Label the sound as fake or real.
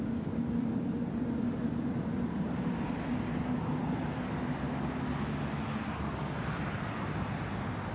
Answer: real